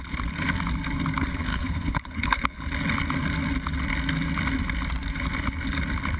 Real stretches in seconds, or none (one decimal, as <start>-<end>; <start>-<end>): 0.0-1.5; 2.7-6.2